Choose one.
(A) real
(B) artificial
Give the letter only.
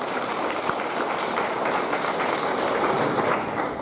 A